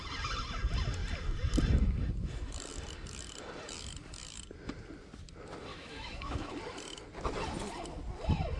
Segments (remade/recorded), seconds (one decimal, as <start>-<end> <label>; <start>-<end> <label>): 0.0-5.7 recorded; 5.7-6.5 remade; 6.5-8.6 recorded

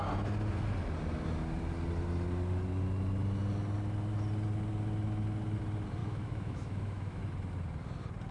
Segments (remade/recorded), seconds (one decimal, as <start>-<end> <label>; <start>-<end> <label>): 0.0-6.0 recorded; 6.0-7.2 remade; 7.2-8.3 recorded

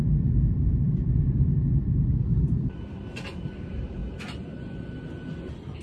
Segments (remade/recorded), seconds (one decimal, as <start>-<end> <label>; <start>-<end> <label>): 0.0-5.8 recorded

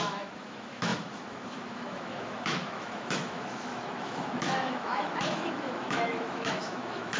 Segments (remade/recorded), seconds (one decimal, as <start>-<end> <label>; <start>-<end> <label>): 0.0-7.2 remade

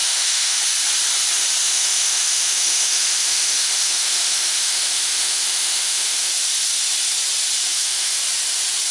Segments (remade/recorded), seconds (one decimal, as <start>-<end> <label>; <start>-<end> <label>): 0.0-0.6 remade; 0.6-1.6 recorded; 1.6-6.3 remade; 6.3-7.7 recorded; 7.7-8.2 remade; 8.2-8.9 recorded

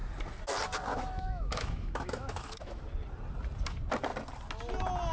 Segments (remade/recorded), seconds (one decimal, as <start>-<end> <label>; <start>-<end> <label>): 0.0-0.9 recorded; 0.9-2.8 remade; 2.8-5.1 recorded